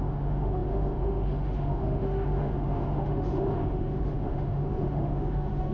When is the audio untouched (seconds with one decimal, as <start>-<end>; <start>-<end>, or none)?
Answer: none